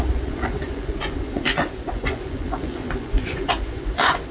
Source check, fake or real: fake